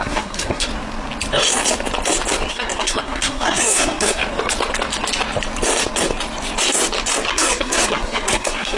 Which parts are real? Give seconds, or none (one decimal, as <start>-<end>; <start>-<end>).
0.7-2.5; 4.2-7.3